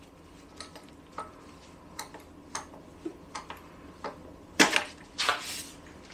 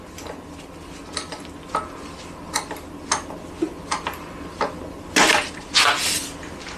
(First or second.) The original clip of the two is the second